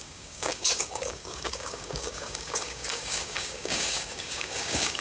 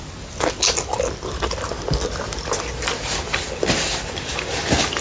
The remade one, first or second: first